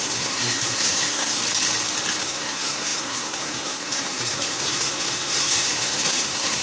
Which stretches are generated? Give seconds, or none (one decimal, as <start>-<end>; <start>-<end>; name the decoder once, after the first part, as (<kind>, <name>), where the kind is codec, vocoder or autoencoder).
0.0-1.4 (codec, SNAC); 2.2-6.6